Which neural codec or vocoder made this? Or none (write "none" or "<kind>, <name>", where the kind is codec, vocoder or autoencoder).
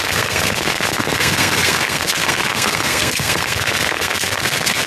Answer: codec, SNAC